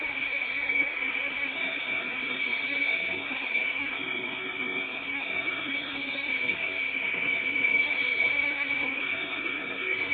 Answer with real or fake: fake